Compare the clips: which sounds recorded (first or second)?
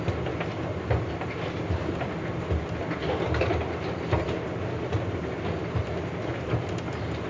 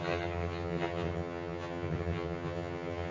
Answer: first